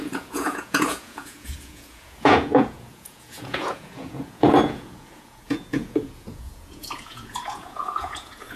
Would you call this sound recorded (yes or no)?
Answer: no